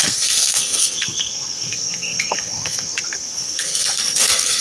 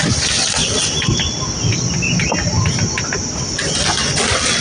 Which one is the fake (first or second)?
first